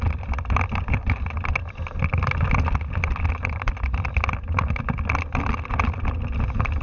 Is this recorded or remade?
recorded